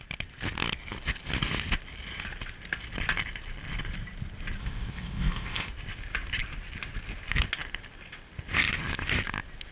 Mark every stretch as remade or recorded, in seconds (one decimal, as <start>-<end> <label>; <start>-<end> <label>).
0.0-4.6 recorded; 4.6-5.7 remade; 5.7-9.7 recorded